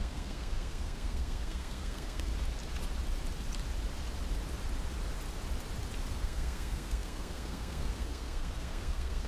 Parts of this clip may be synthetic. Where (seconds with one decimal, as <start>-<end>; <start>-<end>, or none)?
0.0-2.3; 6.1-9.3